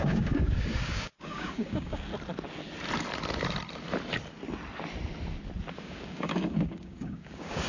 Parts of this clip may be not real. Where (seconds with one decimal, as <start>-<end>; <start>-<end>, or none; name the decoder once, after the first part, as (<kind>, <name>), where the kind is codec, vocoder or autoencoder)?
0.0-2.1 (codec, DAC); 5.7-7.7